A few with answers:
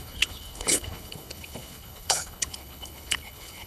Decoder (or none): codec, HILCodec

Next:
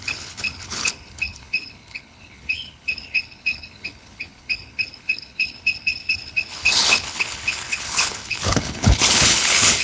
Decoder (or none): codec, HILCodec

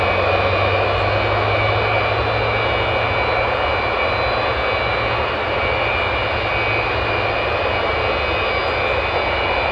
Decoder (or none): none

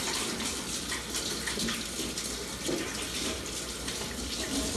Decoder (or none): none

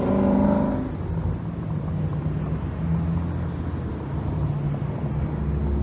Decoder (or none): none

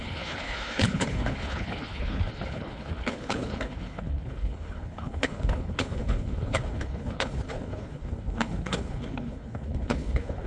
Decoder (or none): codec, HILCodec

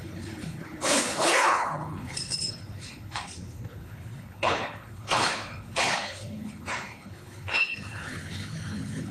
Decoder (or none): codec, HILCodec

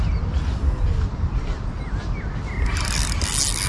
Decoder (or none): none